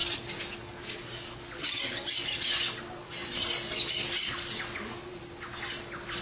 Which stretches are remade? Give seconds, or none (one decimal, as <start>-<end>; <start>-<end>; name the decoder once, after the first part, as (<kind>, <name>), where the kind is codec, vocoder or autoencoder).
none